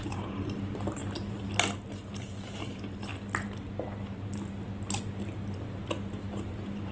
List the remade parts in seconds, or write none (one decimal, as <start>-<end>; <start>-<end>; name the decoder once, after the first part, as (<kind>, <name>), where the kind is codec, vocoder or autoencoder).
0.0-1.0 (vocoder, BigVGAN v2); 2.2-3.1; 6.3-6.9